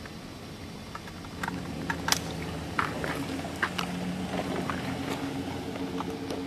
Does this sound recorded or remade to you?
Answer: recorded